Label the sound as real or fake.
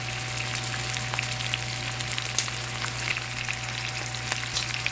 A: real